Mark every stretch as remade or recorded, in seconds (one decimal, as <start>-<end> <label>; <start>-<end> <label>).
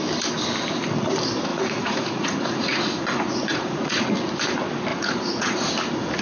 0.0-1.5 recorded; 1.5-4.1 remade; 4.1-4.9 recorded; 4.9-5.7 remade; 5.7-6.2 recorded